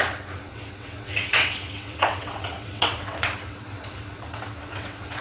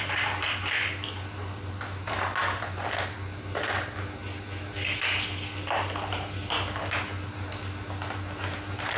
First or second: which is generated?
first